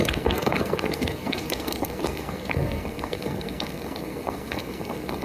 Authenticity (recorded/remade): remade